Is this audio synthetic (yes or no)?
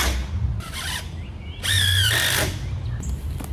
no